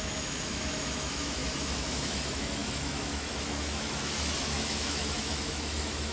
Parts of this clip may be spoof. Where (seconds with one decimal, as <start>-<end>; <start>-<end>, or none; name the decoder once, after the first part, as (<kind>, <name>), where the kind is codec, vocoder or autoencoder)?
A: 0.0-6.1 (autoencoder, DAC-VAE)